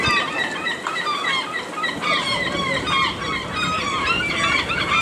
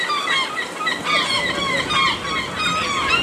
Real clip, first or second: second